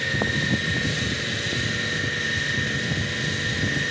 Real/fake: real